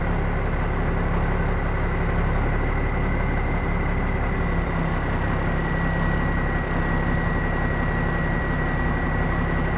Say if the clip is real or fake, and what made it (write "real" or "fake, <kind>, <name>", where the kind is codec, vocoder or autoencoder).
real